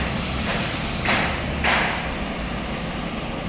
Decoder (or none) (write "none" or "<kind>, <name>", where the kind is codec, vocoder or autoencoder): none